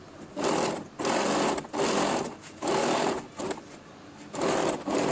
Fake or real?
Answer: real